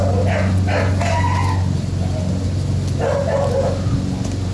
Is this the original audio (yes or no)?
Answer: yes